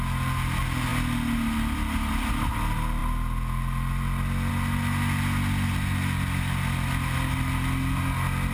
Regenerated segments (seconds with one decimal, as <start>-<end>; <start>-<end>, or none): none